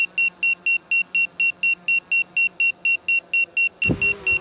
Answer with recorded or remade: recorded